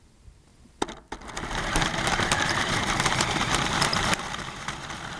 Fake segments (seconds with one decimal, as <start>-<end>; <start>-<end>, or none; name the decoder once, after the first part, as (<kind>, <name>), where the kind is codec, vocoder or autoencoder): 0.0-0.5 (vocoder, BigVGAN v2); 1.5-5.2